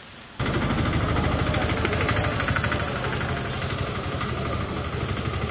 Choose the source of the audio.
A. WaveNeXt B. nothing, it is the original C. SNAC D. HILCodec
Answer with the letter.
B